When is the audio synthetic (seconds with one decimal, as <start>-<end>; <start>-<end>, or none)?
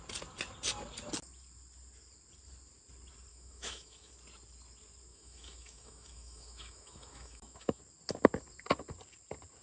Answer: 3.3-4.1; 5.1-7.8